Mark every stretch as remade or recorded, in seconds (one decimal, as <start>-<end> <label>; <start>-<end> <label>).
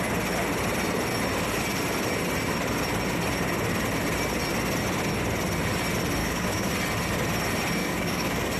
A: 0.0-6.2 recorded; 6.2-6.7 remade; 6.7-7.8 recorded; 7.8-8.6 remade